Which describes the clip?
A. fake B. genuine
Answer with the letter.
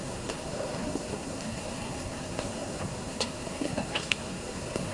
A